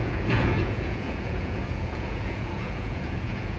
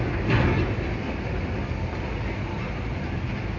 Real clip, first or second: second